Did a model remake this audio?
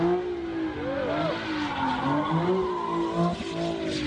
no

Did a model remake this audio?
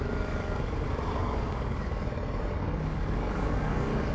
yes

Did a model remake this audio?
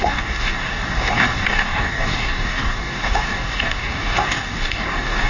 yes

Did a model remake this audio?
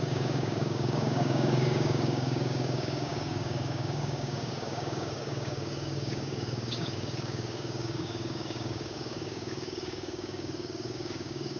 yes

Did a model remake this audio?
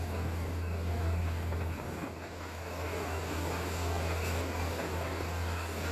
yes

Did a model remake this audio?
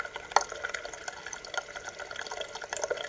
no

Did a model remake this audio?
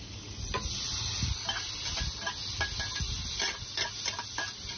no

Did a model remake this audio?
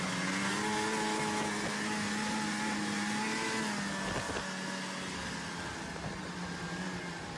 no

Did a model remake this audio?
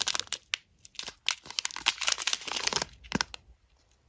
no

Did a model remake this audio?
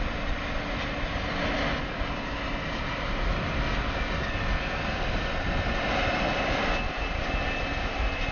no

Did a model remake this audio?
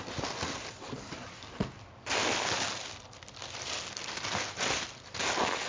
no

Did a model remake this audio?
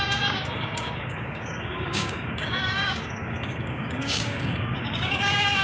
yes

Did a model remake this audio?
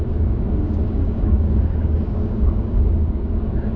yes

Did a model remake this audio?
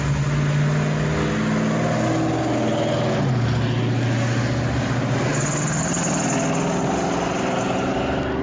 no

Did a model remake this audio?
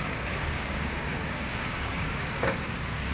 yes